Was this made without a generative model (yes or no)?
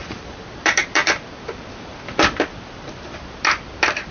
no